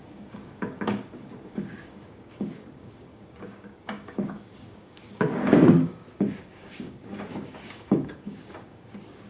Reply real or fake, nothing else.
fake